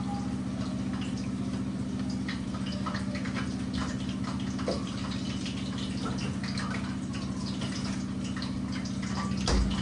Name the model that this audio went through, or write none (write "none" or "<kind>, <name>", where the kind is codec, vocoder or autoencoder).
none